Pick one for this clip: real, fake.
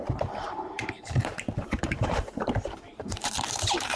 fake